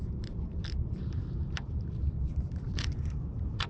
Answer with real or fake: fake